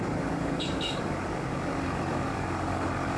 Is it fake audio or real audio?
fake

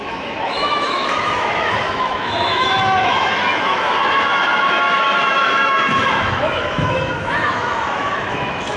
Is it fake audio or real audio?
fake